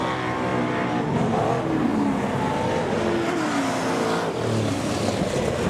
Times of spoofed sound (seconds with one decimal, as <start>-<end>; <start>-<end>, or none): none